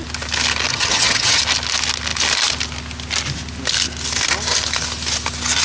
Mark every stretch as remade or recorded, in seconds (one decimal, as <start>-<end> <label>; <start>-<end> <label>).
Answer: 0.0-0.7 recorded; 0.7-1.4 remade; 1.4-5.6 recorded